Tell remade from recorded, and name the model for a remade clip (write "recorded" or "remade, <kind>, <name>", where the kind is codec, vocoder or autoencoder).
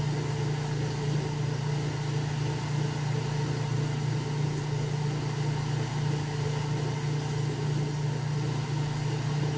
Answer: recorded